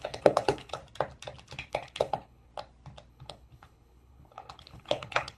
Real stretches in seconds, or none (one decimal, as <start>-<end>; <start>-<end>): 0.8-1.7; 2.5-3.1